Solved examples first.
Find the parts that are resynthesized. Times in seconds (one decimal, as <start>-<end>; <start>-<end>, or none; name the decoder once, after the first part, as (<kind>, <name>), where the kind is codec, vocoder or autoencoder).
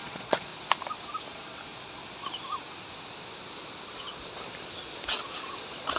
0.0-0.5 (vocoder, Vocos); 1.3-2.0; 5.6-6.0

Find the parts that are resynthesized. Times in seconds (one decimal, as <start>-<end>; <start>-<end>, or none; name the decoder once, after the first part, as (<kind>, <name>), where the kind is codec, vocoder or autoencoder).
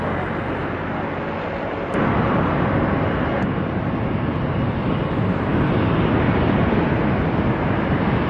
none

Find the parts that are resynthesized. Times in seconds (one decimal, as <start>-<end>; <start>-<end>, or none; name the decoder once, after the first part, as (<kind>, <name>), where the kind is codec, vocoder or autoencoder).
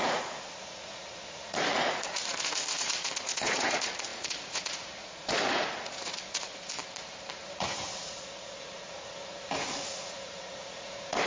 0.0-6.7 (vocoder, Vocos); 7.3-11.3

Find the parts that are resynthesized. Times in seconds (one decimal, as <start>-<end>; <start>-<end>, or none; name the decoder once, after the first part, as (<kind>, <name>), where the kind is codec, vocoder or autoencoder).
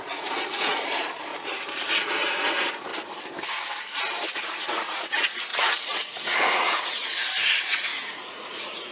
0.0-1.3 (vocoder, Vocos); 1.9-2.9; 4.5-8.9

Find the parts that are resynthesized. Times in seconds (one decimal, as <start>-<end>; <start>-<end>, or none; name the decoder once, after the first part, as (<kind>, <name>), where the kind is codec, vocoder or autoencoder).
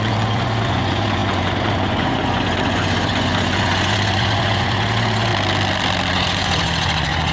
0.0-5.3 (vocoder, Vocos); 6.1-7.3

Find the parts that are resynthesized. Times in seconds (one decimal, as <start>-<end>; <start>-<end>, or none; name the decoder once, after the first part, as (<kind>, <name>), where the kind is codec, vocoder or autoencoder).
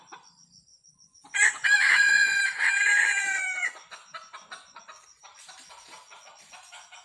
0.7-4.8 (vocoder, Vocos)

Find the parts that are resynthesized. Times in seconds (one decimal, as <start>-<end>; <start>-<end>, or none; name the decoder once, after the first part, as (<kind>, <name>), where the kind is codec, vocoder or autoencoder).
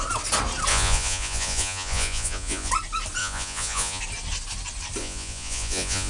0.7-2.7 (vocoder, Vocos); 3.2-4.0; 5.0-6.1